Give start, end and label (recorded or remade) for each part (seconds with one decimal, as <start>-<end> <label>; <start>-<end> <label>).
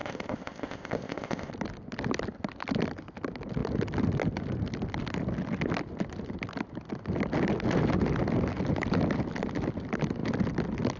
0.0-1.5 remade; 1.5-11.0 recorded